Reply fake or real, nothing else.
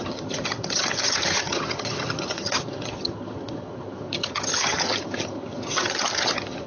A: fake